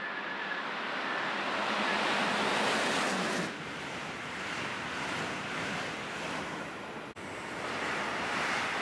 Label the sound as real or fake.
real